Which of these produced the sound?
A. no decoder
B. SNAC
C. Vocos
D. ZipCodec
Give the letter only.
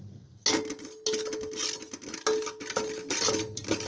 A